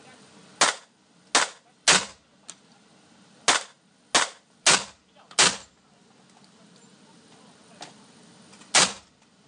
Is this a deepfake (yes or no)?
no